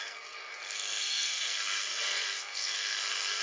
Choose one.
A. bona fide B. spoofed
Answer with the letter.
B